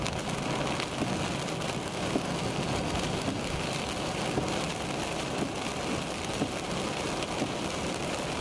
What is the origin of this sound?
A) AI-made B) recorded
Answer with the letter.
B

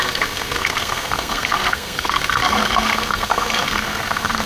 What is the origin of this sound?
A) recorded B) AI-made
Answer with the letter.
B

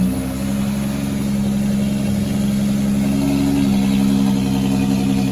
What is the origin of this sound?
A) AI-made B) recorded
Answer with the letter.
B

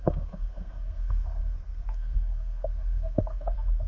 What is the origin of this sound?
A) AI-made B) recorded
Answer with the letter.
A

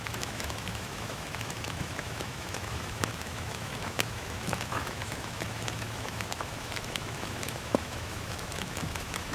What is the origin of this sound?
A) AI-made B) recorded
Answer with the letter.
A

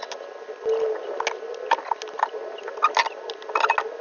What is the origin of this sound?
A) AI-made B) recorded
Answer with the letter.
B